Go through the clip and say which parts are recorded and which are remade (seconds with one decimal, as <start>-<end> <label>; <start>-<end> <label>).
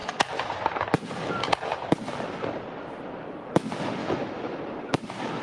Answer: 0.0-4.0 recorded; 4.0-4.6 remade; 4.6-5.4 recorded